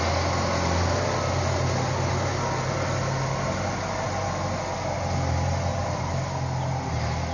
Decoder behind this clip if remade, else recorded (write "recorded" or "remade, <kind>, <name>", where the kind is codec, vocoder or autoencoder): recorded